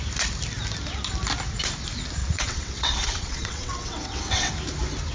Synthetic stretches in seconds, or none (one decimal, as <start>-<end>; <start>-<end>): 2.2-4.5